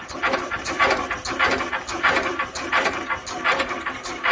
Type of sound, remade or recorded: remade